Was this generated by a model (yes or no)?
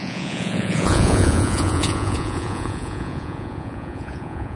yes